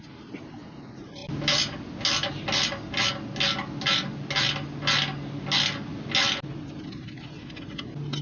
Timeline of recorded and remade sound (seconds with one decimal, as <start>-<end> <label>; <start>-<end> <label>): 0.0-8.2 recorded